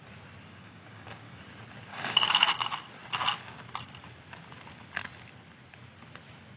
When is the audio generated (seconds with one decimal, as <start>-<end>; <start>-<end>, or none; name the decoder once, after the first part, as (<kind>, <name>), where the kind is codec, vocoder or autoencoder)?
0.5-1.4 (codec, DAC); 1.9-2.5